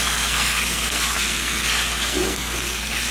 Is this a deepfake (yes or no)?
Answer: yes